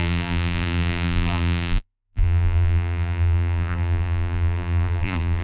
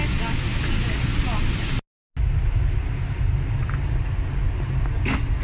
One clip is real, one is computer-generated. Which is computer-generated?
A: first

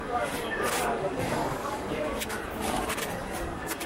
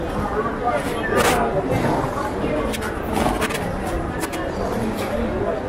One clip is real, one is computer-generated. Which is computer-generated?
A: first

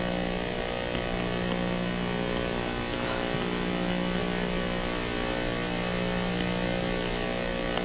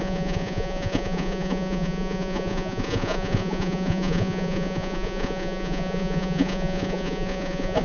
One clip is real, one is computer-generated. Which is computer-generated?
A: second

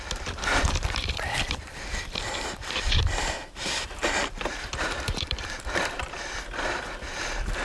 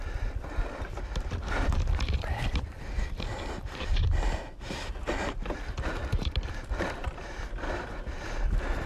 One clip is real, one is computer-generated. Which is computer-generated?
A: first